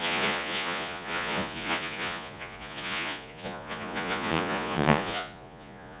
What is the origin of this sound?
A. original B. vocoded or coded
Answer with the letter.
B